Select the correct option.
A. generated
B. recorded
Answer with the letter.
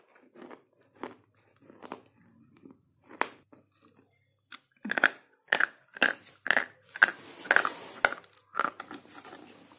B